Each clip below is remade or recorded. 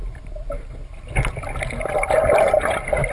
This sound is recorded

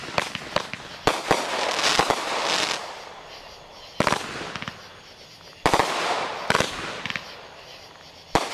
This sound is recorded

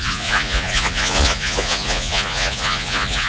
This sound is remade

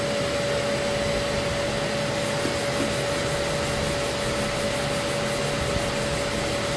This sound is recorded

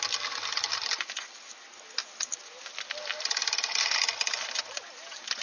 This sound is recorded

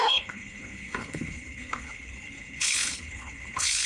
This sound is remade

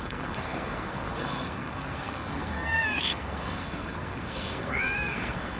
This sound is remade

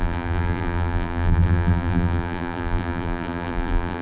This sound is remade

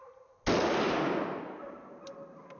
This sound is recorded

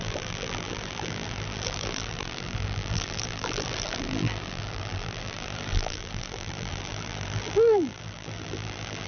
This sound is remade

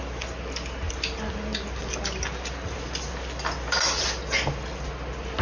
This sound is recorded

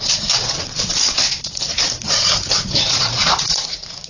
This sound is remade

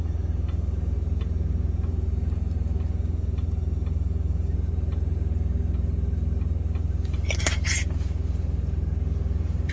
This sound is recorded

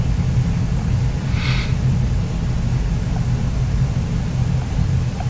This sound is recorded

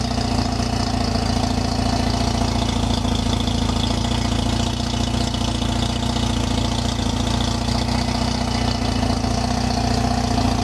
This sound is recorded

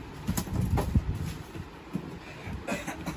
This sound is recorded